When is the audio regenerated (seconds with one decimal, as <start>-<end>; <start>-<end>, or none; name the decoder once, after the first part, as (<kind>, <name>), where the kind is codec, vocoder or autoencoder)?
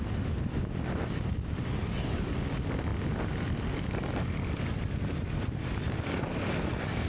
none